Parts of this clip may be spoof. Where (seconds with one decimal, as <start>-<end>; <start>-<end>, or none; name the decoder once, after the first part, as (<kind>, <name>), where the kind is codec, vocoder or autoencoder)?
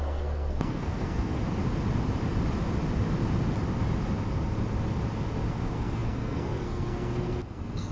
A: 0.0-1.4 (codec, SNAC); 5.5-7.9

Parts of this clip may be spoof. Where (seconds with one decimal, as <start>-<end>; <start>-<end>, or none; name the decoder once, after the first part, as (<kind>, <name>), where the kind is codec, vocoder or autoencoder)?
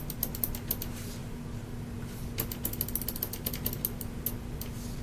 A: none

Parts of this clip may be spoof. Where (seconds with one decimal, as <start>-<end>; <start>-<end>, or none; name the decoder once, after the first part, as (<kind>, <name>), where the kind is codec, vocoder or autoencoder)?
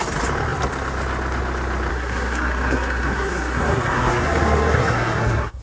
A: 1.9-5.6 (codec, SNAC)